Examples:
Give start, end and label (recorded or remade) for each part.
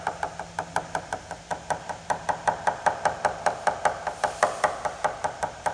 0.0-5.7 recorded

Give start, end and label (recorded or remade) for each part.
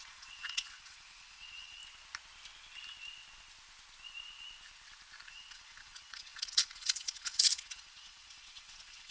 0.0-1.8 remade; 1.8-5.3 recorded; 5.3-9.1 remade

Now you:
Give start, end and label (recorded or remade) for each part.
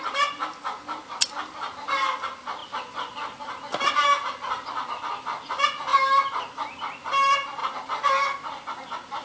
0.0-9.2 recorded